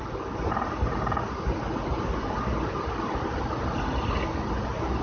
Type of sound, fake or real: real